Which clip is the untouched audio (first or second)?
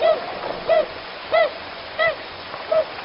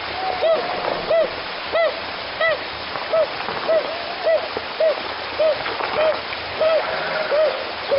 second